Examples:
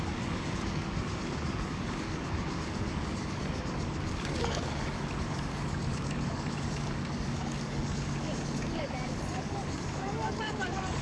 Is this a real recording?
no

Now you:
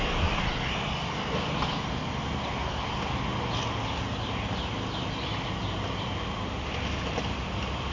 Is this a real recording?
yes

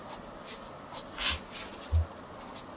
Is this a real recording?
yes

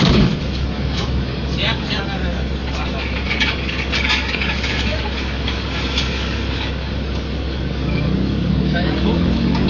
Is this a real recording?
no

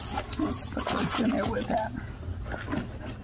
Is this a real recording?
yes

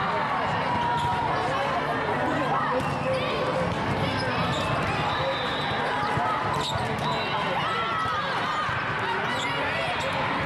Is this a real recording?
yes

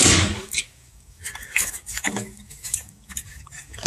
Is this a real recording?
no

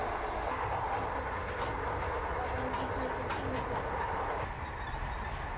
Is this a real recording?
yes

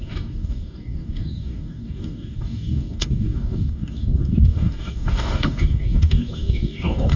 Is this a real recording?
no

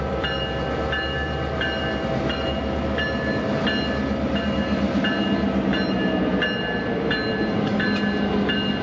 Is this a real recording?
yes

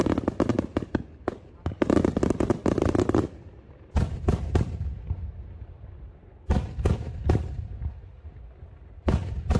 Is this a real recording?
yes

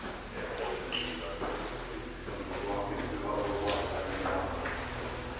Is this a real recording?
yes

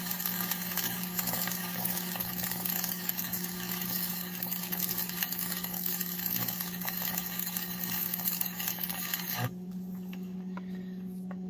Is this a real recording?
no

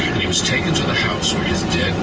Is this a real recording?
yes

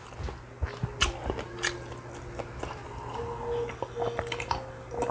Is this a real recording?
yes